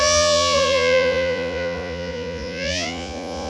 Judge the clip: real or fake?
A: fake